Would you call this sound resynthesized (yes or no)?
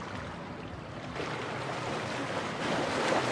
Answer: yes